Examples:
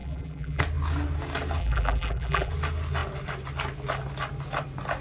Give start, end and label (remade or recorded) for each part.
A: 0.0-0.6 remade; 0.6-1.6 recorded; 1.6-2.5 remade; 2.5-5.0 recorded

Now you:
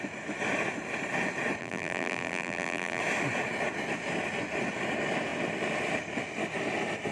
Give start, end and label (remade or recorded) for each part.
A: 0.0-1.6 recorded; 1.6-3.0 remade; 3.0-7.1 recorded

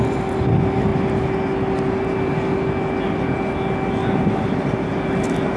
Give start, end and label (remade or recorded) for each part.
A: 0.0-5.6 recorded

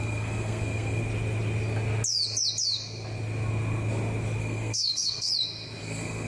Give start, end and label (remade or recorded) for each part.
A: 0.0-1.0 remade; 1.0-4.4 recorded; 4.4-5.3 remade; 5.3-5.8 recorded; 5.8-6.3 remade

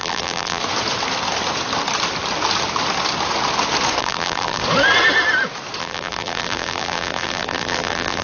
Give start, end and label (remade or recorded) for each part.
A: 0.0-0.6 remade; 0.6-4.0 recorded; 4.0-4.6 remade; 4.6-5.8 recorded; 5.8-8.2 remade

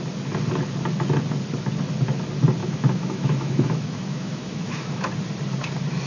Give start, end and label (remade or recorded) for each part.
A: 0.0-2.6 recorded; 2.6-5.1 remade; 5.1-6.1 recorded

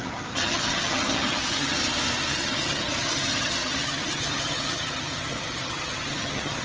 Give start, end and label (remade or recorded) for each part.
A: 0.0-1.8 remade; 1.8-2.3 recorded; 2.3-6.6 remade

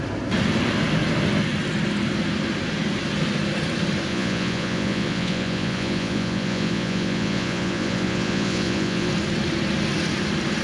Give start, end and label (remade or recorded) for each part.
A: 0.0-4.1 recorded; 4.1-9.1 remade; 9.1-10.6 recorded